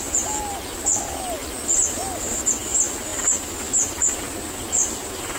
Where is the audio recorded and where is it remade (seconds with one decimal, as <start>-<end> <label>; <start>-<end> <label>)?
0.0-1.6 recorded; 1.6-2.5 remade; 2.5-3.1 recorded; 3.1-3.9 remade; 3.9-5.4 recorded